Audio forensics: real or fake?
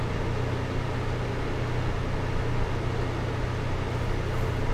real